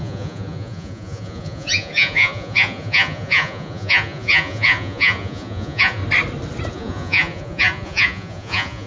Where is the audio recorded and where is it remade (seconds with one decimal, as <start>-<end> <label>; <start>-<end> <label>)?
0.0-6.0 remade; 6.0-6.7 recorded; 6.7-8.9 remade